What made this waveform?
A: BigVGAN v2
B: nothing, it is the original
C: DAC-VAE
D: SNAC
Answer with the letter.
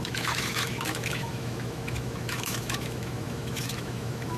C